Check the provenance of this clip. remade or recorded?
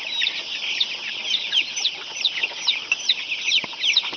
recorded